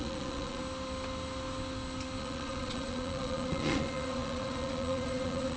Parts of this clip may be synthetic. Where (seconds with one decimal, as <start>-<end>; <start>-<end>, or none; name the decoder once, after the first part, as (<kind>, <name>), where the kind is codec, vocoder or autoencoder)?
0.0-0.6 (vocoder, Vocos); 2.2-5.6